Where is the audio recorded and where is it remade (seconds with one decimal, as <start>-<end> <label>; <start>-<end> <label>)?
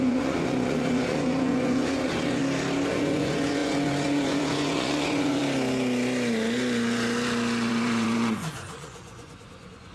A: 0.0-2.4 remade; 2.4-2.9 recorded; 2.9-5.4 remade; 5.4-7.7 recorded; 7.7-9.9 remade